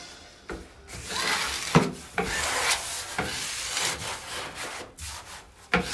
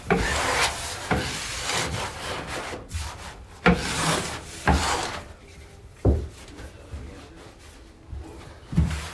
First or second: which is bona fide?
first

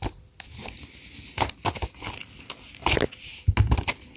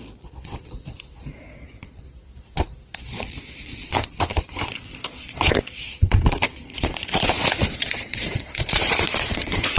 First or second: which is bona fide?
first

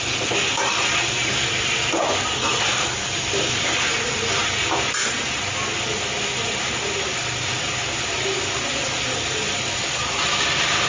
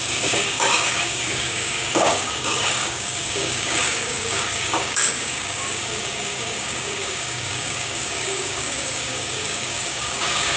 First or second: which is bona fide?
first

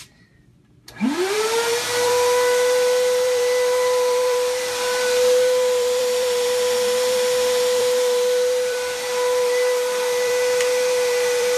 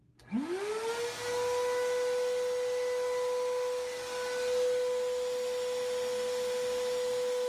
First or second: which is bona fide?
second